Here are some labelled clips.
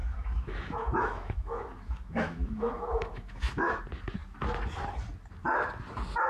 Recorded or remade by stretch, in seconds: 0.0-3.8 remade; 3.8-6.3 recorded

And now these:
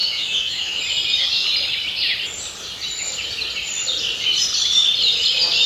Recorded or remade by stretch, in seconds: 0.0-0.8 remade; 0.8-5.7 recorded